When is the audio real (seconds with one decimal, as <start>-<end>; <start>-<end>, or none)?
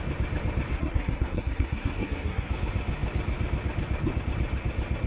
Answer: 0.0-0.7; 2.5-5.1